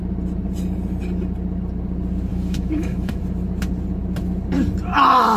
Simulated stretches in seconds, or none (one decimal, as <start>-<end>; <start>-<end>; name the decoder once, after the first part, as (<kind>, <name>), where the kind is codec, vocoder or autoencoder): 2.3-3.2 (autoencoder, DAC-VAE)